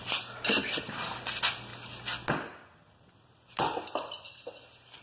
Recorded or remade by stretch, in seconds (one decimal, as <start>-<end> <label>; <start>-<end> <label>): 0.0-0.6 recorded; 0.6-1.2 remade; 1.2-5.0 recorded